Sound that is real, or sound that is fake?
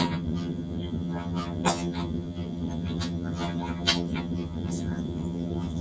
fake